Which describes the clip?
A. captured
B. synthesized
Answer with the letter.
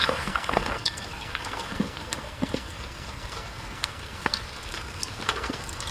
B